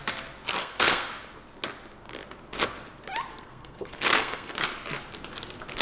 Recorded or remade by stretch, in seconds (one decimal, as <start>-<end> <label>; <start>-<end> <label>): 0.0-0.6 recorded; 0.6-1.1 remade; 1.1-3.3 recorded; 3.3-4.6 remade; 4.6-5.8 recorded